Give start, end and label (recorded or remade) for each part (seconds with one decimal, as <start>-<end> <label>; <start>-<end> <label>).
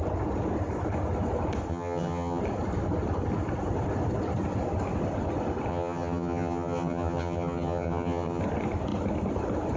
0.0-1.7 recorded; 1.7-2.4 remade; 2.4-5.7 recorded; 5.7-8.4 remade; 8.4-9.8 recorded